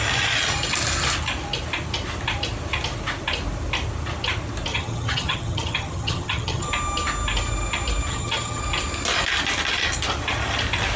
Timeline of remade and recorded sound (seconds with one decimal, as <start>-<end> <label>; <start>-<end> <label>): 0.0-4.7 recorded; 4.7-6.7 remade; 6.7-8.1 recorded; 8.1-8.6 remade; 8.6-11.0 recorded